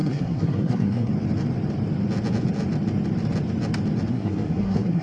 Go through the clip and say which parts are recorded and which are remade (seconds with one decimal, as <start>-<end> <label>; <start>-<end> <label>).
0.0-1.1 remade; 1.1-4.1 recorded; 4.1-5.0 remade